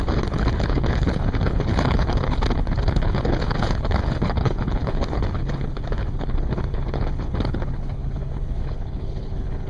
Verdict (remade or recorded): remade